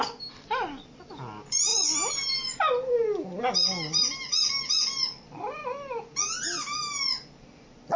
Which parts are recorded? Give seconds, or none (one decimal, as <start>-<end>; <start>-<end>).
0.0-8.0